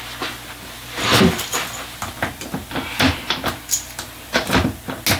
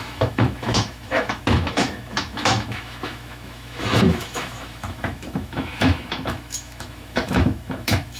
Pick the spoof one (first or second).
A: second